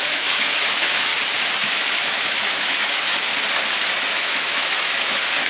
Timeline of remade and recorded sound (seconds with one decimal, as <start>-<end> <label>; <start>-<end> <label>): 0.0-1.1 remade; 1.1-1.7 recorded; 1.7-3.3 remade; 3.3-4.1 recorded; 4.1-5.5 remade